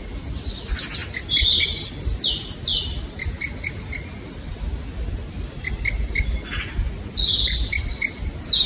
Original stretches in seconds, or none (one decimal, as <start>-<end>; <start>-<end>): 0.0-8.7